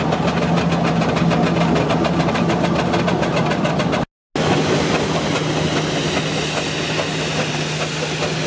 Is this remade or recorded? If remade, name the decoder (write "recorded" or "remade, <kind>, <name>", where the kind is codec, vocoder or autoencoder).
recorded